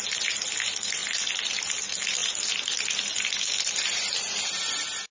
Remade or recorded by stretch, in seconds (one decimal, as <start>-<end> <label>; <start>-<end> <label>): 0.0-5.1 recorded